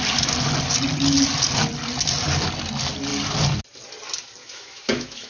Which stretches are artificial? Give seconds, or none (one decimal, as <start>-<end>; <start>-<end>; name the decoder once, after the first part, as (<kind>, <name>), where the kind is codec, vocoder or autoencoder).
4.4-5.3 (autoencoder, DAC-VAE)